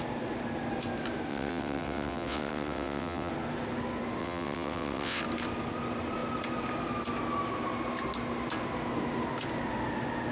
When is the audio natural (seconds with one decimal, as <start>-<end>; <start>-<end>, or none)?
0.0-1.3; 3.3-4.2; 5.2-10.3